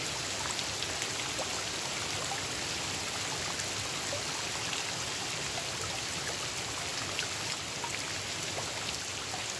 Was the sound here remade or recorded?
recorded